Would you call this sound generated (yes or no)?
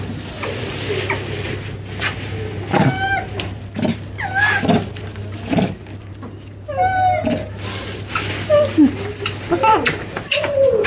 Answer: no